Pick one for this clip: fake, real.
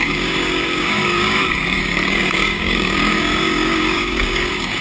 fake